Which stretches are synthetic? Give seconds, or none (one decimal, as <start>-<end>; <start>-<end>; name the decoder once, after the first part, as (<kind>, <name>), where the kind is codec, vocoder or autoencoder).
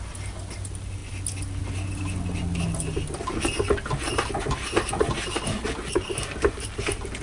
none